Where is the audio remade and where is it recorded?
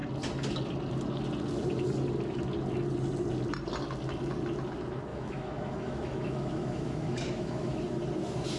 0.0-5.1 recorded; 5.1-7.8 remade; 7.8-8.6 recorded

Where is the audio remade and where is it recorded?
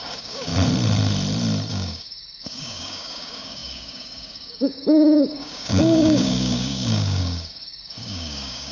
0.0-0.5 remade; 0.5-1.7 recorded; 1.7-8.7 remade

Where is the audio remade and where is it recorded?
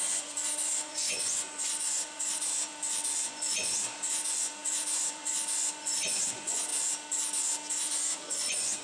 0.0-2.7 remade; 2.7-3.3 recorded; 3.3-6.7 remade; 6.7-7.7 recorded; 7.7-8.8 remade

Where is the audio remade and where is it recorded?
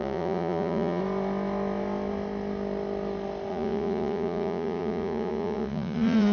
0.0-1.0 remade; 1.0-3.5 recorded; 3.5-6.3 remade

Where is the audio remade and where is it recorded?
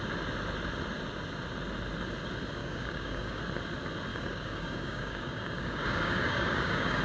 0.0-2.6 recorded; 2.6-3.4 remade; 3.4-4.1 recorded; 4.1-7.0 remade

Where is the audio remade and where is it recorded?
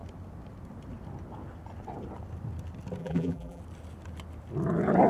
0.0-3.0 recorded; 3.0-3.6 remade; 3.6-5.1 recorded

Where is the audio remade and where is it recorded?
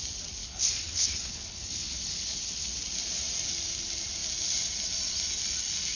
0.0-0.4 recorded; 0.4-2.7 remade; 2.7-5.9 recorded